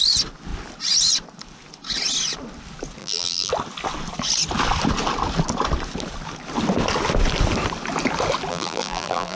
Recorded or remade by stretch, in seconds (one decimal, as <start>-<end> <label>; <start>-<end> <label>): 0.0-3.0 recorded; 3.0-3.5 remade; 3.5-8.5 recorded; 8.5-9.4 remade